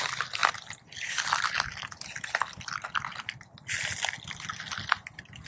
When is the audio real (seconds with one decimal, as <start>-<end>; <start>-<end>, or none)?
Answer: 0.0-5.5